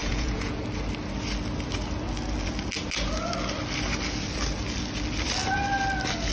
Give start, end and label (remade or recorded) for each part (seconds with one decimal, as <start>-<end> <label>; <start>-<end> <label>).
0.0-0.6 remade; 0.6-6.3 recorded